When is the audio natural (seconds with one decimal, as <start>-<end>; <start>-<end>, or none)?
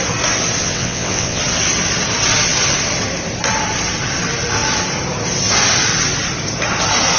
0.0-0.6; 1.4-7.2